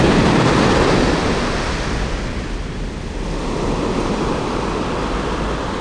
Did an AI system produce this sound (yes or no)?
no